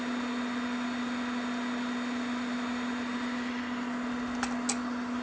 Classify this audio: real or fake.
real